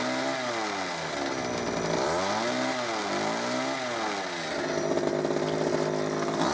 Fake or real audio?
real